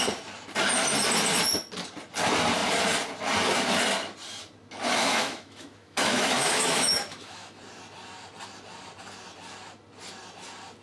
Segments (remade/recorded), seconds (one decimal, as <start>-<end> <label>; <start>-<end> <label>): 0.0-4.9 recorded; 4.9-7.6 remade; 7.6-10.8 recorded